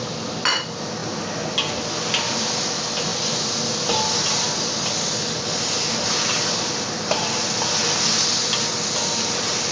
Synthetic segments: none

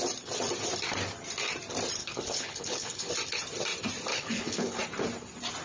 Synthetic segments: 2.0-3.1 (codec, HILCodec); 4.1-4.8

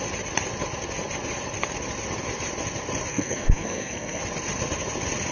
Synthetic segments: 3.1-4.2 (codec, SNAC)

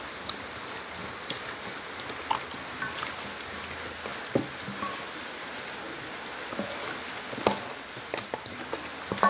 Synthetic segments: none

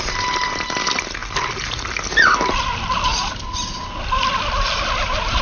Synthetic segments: 1.2-1.8 (vocoder, BigVGAN v2); 3.1-4.5